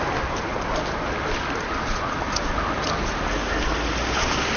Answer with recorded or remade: recorded